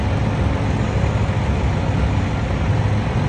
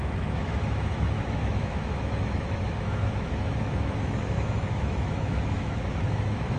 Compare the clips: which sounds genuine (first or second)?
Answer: first